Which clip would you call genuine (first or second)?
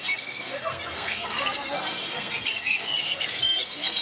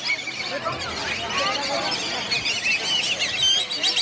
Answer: second